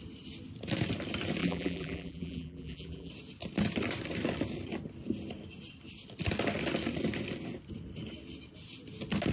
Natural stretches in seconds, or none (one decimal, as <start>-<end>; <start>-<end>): 0.0-1.4; 3.1-9.3